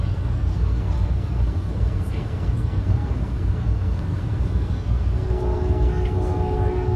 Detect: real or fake fake